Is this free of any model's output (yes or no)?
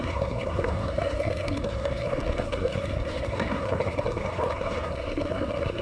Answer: no